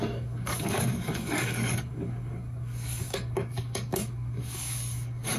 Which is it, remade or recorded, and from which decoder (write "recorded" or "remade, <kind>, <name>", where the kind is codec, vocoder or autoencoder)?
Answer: remade, codec, DAC